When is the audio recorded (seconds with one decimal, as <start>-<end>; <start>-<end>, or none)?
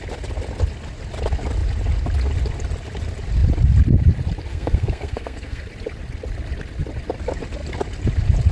0.0-4.5; 5.6-8.5